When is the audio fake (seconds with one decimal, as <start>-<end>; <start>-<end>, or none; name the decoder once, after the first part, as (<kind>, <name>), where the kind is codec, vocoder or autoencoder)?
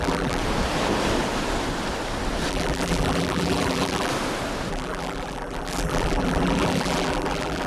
0.0-0.4 (vocoder, BigVGAN v2); 2.5-4.1; 4.7-7.7